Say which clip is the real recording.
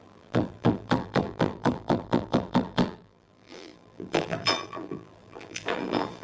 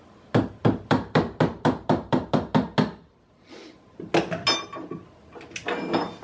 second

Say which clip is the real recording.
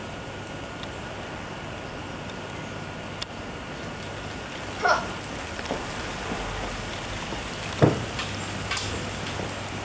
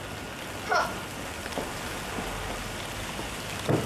second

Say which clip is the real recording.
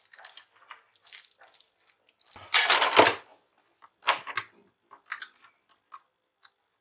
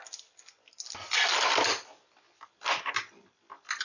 first